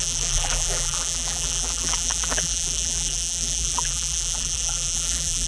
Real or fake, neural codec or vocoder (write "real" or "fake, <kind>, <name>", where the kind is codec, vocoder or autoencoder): fake, vocoder, BigVGAN v2